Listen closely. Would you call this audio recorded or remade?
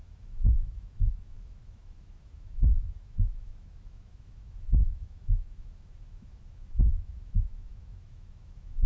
remade